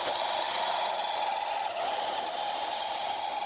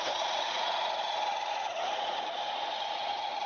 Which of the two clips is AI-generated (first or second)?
second